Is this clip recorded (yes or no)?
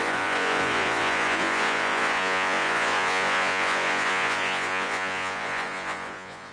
no